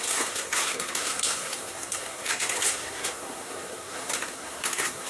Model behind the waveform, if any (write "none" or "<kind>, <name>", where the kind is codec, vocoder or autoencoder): codec, SNAC